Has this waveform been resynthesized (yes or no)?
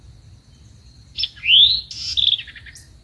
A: no